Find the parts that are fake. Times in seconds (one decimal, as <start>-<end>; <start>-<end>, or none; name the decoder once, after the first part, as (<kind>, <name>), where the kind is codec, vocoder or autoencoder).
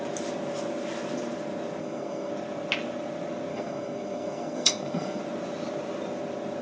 1.8-2.3 (codec, SNAC); 3.5-5.2